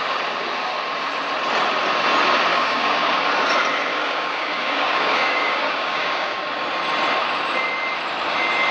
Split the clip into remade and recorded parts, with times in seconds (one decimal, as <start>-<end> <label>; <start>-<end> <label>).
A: 0.0-2.5 recorded; 2.5-3.2 remade; 3.2-3.9 recorded; 3.9-6.4 remade; 6.4-8.7 recorded